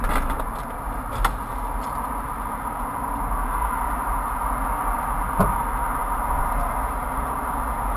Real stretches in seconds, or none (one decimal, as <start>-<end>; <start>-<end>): 0.0-6.0; 7.4-8.0